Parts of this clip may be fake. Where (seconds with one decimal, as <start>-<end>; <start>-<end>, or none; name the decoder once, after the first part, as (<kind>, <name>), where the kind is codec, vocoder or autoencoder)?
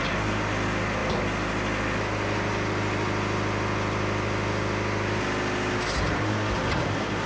none